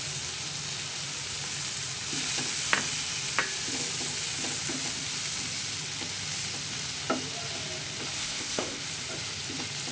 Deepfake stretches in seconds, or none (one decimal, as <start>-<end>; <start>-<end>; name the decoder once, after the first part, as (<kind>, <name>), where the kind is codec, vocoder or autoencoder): 8.2-8.8 (codec, ZipCodec)